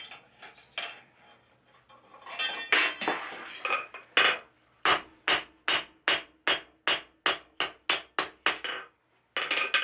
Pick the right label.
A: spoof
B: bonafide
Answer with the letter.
B